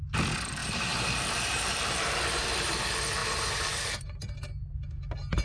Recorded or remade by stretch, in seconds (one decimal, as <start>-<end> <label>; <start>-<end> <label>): 0.0-0.6 recorded; 0.6-2.8 remade; 2.8-3.2 recorded; 3.2-4.2 remade; 4.2-5.4 recorded